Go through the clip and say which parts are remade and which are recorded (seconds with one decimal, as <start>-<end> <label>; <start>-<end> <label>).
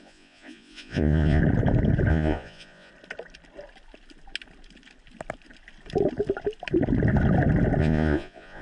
0.0-1.4 remade; 1.4-2.1 recorded; 2.1-2.9 remade; 2.9-7.8 recorded; 7.8-8.6 remade